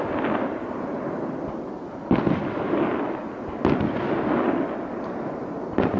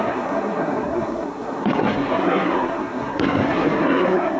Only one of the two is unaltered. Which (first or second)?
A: first